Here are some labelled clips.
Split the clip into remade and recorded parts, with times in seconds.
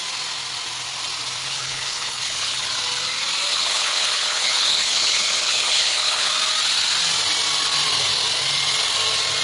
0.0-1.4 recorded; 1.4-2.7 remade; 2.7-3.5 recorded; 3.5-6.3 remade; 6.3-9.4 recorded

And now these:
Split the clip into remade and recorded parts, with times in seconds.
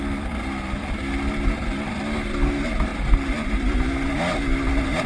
0.0-5.1 recorded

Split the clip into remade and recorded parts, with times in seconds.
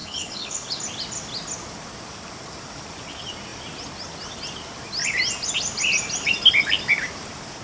0.0-0.8 remade; 0.8-7.6 recorded